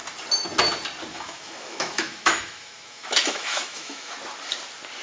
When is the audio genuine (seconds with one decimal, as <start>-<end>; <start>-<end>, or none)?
0.0-1.1; 4.1-5.0